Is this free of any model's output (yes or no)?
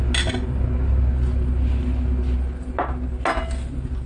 yes